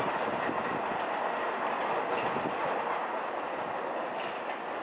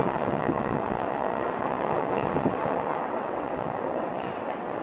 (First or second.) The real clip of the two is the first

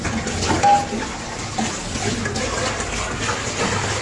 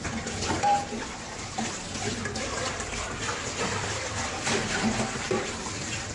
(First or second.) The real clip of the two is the first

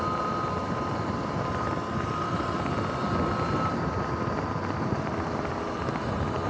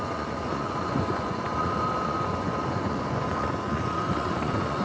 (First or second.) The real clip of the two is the first